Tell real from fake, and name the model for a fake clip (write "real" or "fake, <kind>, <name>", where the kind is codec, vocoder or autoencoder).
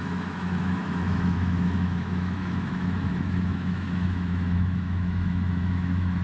fake, autoencoder, DAC-VAE